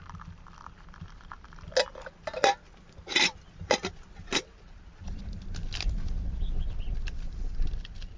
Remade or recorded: recorded